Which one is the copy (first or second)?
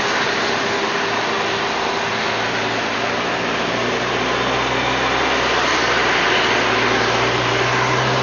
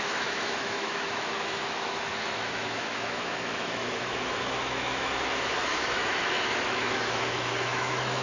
second